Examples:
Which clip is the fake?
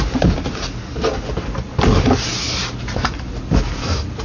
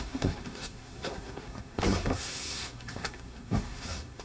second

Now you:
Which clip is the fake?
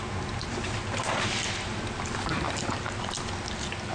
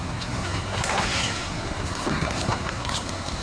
second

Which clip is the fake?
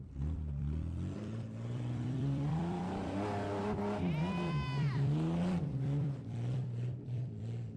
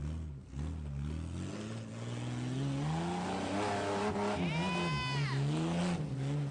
first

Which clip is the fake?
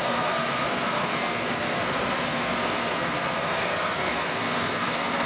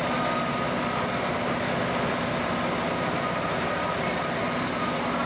first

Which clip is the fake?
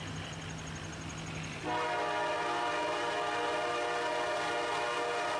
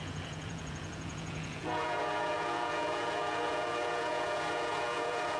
second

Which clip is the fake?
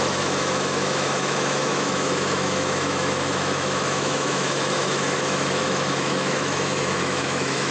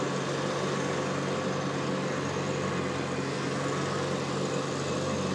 first